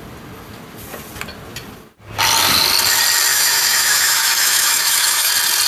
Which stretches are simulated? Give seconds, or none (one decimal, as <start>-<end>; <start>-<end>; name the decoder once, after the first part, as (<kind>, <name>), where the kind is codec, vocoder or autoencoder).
3.3-5.3 (autoencoder, DAC-VAE)